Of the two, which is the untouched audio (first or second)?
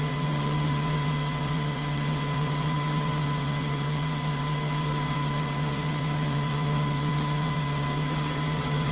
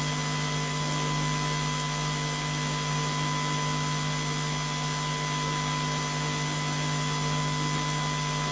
second